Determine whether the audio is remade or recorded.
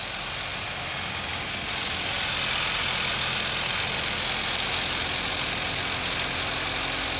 recorded